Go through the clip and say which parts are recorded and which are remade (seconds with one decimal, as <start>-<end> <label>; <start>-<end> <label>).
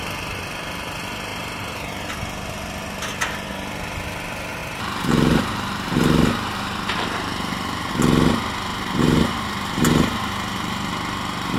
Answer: 0.0-1.3 recorded; 1.3-2.1 remade; 2.1-4.6 recorded; 4.6-7.9 remade; 7.9-8.7 recorded; 8.7-10.9 remade; 10.9-11.6 recorded